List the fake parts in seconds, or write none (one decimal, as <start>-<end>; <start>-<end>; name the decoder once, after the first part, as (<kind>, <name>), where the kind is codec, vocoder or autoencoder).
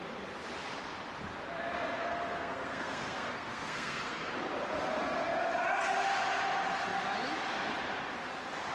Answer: 2.0-4.3 (codec, SNAC)